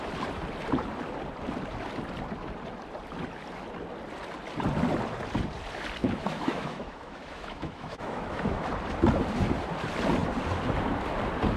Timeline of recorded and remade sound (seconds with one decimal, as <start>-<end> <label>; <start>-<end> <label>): 0.0-6.0 recorded; 6.0-8.7 remade; 8.7-11.6 recorded